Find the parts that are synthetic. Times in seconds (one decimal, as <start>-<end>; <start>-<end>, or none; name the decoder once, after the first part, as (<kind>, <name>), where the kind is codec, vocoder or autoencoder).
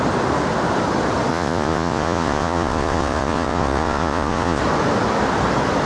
1.3-4.6 (vocoder, Vocos)